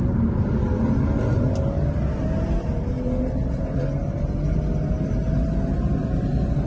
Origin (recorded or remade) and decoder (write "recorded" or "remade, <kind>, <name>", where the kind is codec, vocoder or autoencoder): recorded